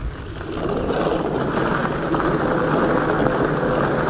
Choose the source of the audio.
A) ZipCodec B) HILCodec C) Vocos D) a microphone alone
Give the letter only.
D